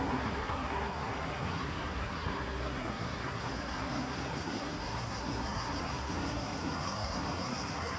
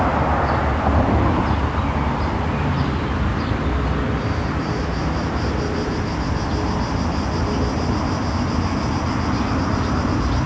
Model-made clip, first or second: first